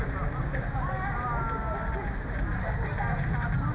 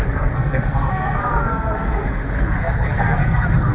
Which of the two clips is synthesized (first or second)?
second